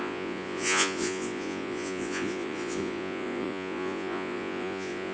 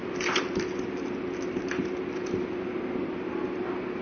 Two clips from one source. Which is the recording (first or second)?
second